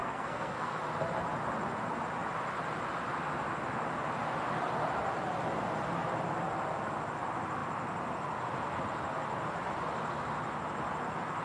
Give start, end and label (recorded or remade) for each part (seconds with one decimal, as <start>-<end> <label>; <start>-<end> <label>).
0.0-0.8 remade; 0.8-11.4 recorded